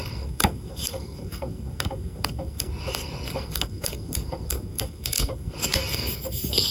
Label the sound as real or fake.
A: fake